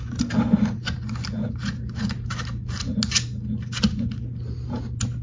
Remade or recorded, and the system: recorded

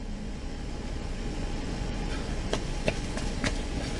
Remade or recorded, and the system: remade, vocoder, Vocos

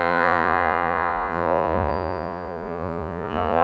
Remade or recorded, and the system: remade, vocoder, Vocos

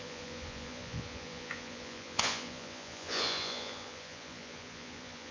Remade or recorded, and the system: remade, vocoder, Vocos